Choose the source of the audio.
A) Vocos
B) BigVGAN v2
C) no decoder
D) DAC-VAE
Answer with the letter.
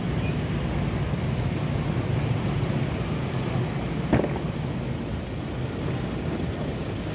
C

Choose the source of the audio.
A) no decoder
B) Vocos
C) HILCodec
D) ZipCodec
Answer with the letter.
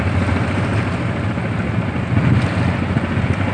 A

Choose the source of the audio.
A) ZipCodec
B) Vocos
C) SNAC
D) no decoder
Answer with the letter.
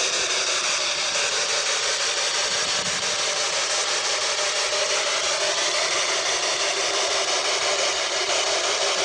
D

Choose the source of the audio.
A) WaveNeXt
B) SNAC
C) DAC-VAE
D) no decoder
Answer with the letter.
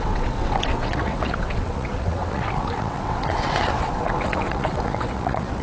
A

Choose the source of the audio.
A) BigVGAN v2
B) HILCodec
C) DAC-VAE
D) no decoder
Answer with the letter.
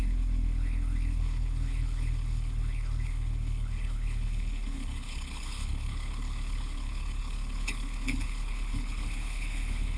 B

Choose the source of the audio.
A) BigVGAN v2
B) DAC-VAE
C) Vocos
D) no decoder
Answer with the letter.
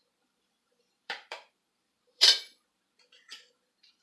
A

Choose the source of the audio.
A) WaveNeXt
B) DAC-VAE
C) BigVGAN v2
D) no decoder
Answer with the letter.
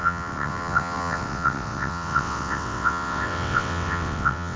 A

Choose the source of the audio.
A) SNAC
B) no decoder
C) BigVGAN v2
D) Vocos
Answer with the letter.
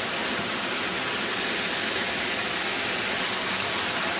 B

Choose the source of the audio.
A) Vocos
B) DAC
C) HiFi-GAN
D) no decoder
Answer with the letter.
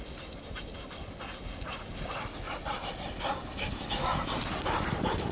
D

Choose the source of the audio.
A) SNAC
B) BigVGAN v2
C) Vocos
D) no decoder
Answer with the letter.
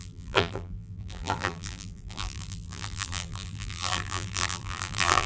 B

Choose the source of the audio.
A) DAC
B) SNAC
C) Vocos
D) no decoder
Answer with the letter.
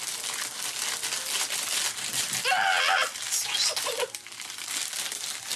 D